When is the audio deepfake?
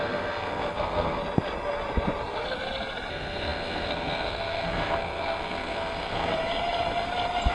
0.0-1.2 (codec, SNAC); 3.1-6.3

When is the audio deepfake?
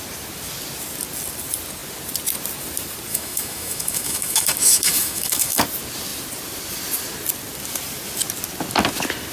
3.1-5.6 (autoencoder, DAC-VAE)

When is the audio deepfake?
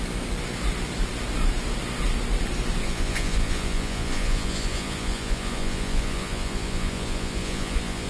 2.8-8.1 (vocoder, Vocos)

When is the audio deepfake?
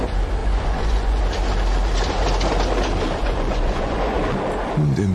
0.4-1.2 (vocoder, Vocos); 3.2-4.2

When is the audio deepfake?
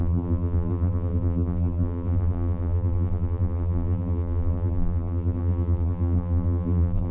0.0-7.1 (vocoder, BigVGAN v2)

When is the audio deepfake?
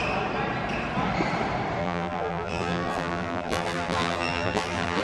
1.8-5.0 (vocoder, BigVGAN v2)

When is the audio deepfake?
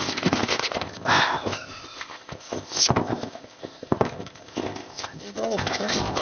0.0-6.2 (codec, ZipCodec)